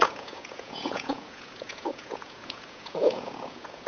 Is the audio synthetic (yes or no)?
yes